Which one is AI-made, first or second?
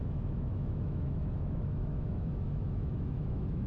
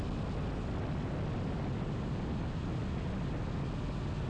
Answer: first